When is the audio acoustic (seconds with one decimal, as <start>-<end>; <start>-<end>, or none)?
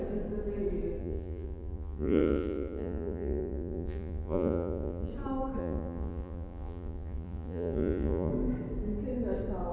0.0-1.0; 5.1-5.6; 8.3-9.7